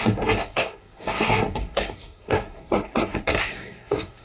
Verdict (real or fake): fake